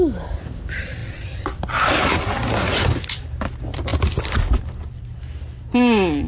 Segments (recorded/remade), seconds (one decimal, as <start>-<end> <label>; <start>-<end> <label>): 0.0-6.3 recorded